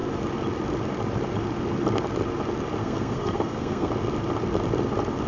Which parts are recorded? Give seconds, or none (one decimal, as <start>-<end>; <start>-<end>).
0.0-2.8; 3.9-5.3